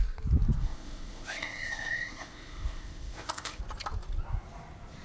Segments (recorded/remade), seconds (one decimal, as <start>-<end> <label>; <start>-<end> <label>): 0.0-0.6 recorded; 0.6-3.6 remade; 3.6-5.0 recorded